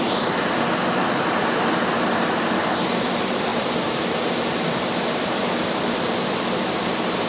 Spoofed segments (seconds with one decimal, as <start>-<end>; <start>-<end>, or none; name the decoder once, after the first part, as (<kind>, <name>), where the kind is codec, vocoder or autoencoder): none